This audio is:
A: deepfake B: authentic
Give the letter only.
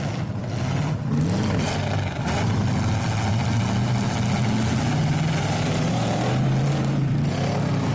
B